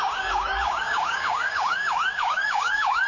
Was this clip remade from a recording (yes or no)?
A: yes